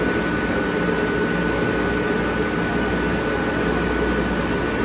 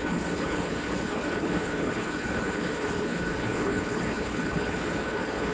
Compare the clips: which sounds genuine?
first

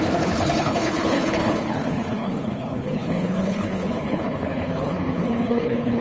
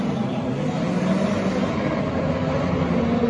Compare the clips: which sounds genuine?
second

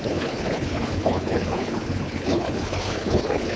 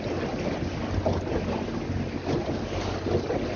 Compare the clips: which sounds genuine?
second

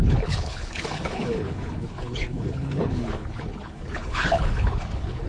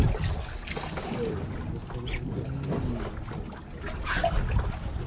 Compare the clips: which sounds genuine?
second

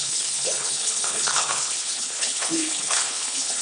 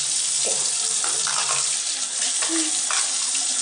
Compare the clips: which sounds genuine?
second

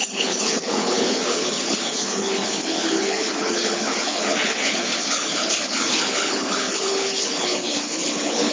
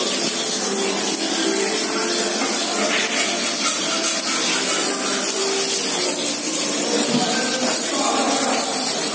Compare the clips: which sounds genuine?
second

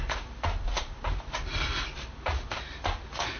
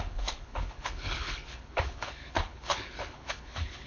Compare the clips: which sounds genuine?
first